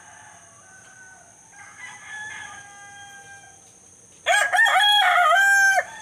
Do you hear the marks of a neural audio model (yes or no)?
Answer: no